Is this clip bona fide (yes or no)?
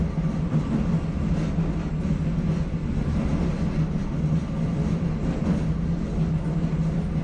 yes